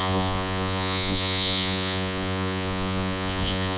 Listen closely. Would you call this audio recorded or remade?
remade